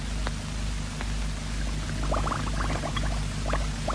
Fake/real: real